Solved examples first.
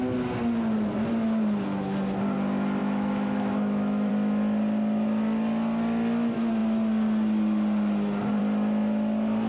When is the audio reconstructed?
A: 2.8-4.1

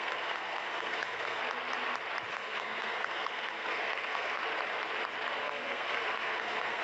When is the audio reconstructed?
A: 0.0-1.4; 2.3-4.4; 5.4-6.8

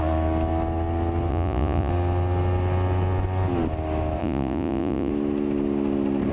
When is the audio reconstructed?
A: 1.3-1.9; 4.2-5.1

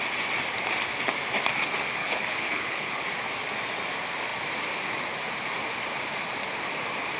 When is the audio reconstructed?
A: 2.0-3.0

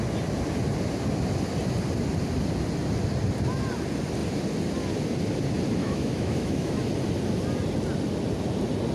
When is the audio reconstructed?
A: 5.8-6.7

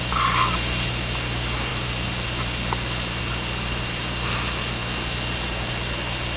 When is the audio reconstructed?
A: 1.7-3.2

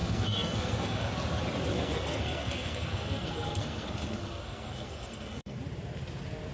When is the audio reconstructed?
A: 0.0-1.1; 1.7-5.6